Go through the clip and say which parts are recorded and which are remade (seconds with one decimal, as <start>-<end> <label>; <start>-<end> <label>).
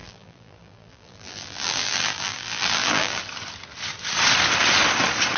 0.0-3.2 remade; 3.2-5.4 recorded